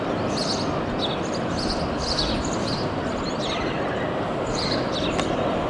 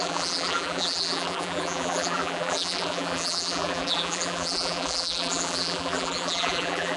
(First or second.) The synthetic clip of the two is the second